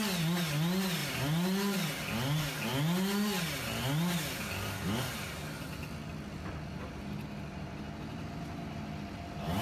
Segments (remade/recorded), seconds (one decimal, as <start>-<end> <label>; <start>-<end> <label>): 0.0-1.0 recorded; 1.0-1.9 remade; 1.9-9.6 recorded